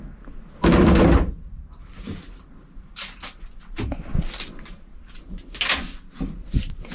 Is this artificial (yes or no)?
no